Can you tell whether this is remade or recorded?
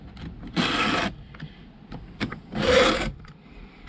remade